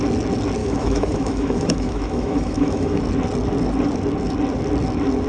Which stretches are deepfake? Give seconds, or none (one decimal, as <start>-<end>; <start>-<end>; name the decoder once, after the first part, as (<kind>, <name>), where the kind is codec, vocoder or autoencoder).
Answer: 0.6-3.0 (autoencoder, DAC-VAE)